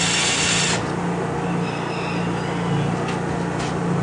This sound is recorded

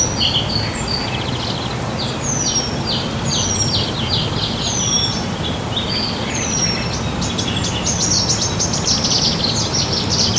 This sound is recorded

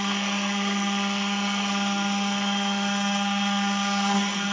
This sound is remade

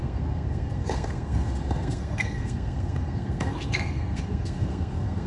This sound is remade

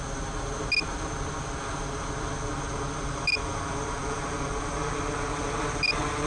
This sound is recorded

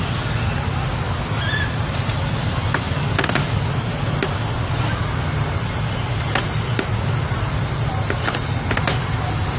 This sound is recorded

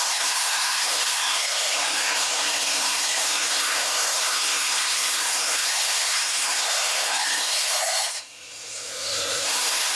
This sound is remade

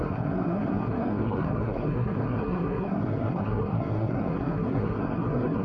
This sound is remade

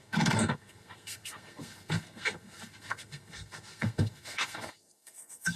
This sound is remade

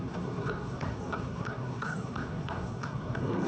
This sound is remade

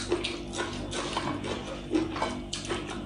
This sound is recorded